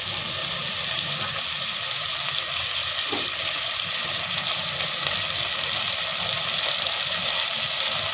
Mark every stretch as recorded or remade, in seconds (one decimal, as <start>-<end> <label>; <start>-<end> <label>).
0.0-0.4 recorded; 0.4-2.1 remade; 2.1-2.8 recorded; 2.8-4.9 remade; 4.9-6.1 recorded; 6.1-6.9 remade; 6.9-8.1 recorded